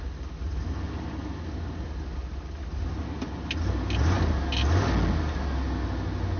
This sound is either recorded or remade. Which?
recorded